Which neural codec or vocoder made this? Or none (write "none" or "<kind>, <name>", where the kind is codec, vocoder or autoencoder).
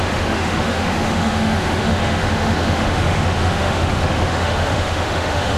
autoencoder, DAC-VAE